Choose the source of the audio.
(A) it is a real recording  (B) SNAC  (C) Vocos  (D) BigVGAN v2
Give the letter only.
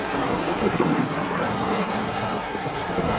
B